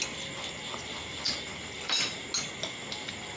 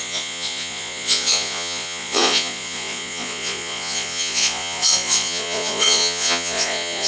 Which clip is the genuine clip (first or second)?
first